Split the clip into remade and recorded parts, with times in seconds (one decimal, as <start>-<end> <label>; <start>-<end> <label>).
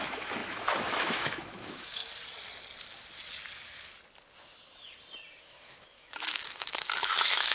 0.0-2.0 remade; 2.0-5.4 recorded; 5.4-7.5 remade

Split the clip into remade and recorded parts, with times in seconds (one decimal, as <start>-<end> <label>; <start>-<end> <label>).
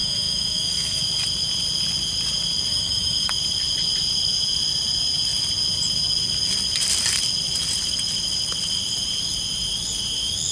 0.0-1.0 remade; 1.0-2.7 recorded; 2.7-3.3 remade; 3.3-10.5 recorded